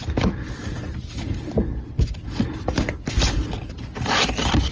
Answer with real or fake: real